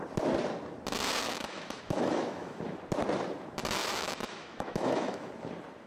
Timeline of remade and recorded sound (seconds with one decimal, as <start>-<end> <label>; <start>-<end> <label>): 0.0-1.2 recorded; 1.2-2.6 remade; 2.6-3.8 recorded; 3.8-5.3 remade; 5.3-5.9 recorded